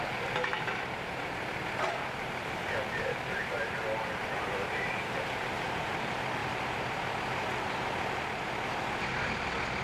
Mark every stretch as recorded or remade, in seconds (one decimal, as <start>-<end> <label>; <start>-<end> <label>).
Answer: 0.0-2.0 recorded; 2.0-3.7 remade; 3.7-4.2 recorded; 4.2-5.8 remade; 5.8-9.8 recorded